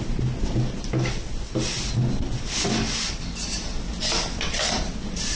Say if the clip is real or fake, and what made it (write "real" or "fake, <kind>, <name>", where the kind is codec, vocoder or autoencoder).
real